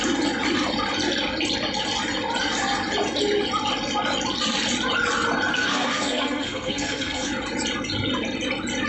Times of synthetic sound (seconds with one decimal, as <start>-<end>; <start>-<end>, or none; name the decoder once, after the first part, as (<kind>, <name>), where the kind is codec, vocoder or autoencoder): 5.5-7.3 (codec, SNAC)